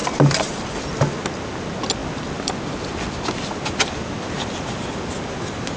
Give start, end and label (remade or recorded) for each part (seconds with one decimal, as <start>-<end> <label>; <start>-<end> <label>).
0.0-0.7 remade; 0.7-5.8 recorded